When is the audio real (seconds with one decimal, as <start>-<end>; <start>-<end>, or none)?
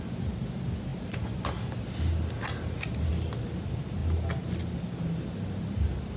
0.0-6.2